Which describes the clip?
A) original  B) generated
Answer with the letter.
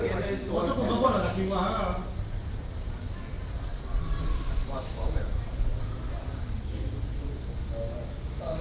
A